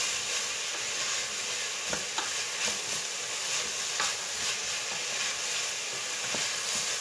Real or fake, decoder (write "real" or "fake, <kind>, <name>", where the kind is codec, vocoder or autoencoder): real